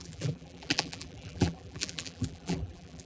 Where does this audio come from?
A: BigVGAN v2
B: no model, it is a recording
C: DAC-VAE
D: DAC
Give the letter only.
A